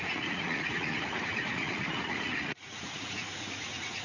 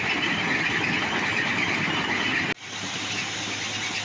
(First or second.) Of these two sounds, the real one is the second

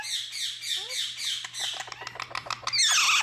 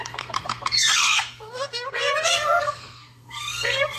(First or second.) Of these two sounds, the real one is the first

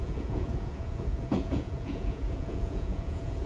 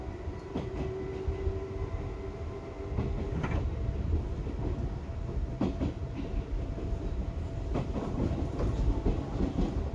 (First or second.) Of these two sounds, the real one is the second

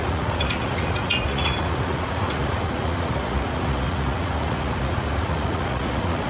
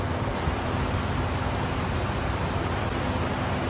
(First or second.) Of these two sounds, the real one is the second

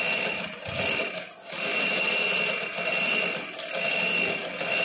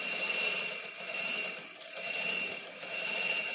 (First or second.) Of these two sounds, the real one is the first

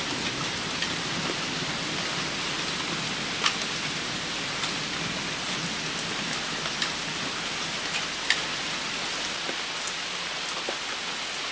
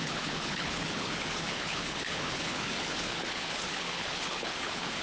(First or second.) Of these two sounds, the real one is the first